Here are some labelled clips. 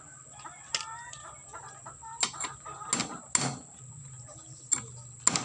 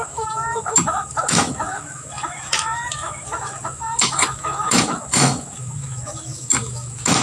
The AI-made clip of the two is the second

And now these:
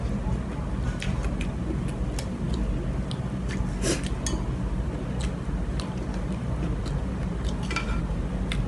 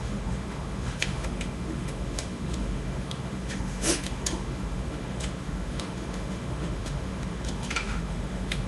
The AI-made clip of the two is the second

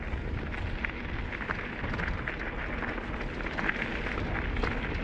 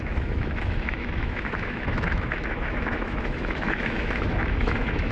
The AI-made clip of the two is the second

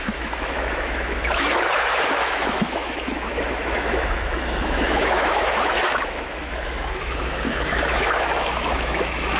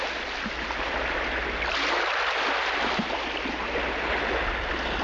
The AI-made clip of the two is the first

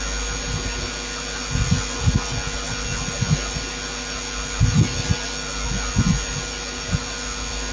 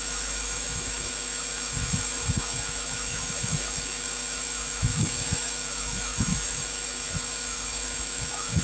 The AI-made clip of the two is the second